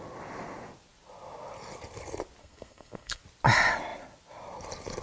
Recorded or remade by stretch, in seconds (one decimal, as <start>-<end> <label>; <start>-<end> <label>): 0.0-2.4 recorded; 2.4-3.2 remade; 3.2-5.0 recorded